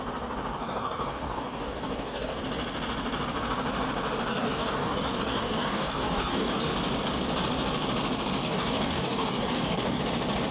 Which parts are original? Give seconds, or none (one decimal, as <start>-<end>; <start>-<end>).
0.0-0.5; 2.4-4.3; 6.7-8.4; 10.0-10.5